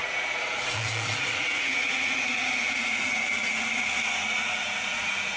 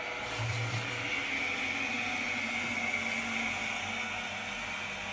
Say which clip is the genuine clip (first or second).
second